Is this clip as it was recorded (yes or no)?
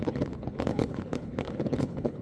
no